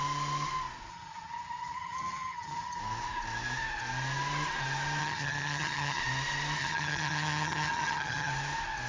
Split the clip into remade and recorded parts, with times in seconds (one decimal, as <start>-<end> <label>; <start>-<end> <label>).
0.0-0.9 recorded; 0.9-2.8 remade; 2.8-5.0 recorded; 5.0-6.0 remade; 6.0-6.6 recorded; 6.6-8.3 remade; 8.3-8.9 recorded